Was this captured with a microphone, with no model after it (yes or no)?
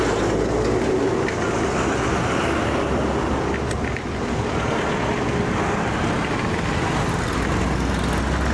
yes